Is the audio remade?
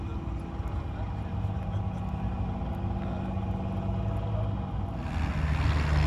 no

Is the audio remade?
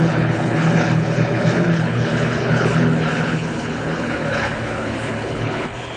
yes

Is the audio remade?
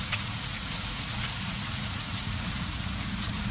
yes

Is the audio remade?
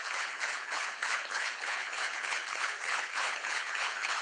yes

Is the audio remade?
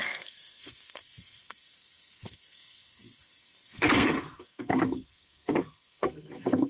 yes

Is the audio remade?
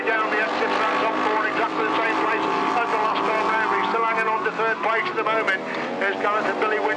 no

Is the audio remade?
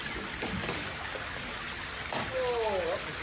no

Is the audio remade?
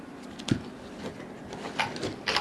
no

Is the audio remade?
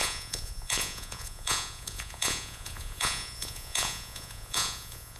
yes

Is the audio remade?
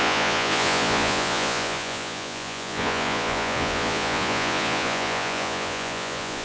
yes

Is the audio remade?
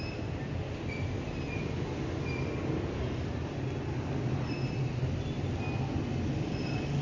no